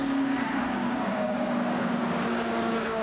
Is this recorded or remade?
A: remade